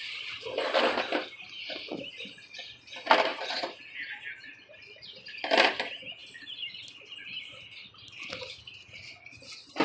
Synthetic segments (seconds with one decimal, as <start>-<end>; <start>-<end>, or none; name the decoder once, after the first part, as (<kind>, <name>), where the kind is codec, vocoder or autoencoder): 3.3-5.1 (vocoder, BigVGAN v2)